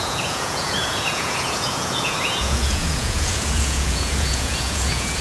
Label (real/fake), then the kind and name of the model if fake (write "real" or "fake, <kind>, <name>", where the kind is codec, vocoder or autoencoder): fake, vocoder, Vocos